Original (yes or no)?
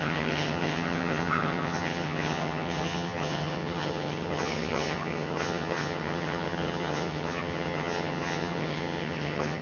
no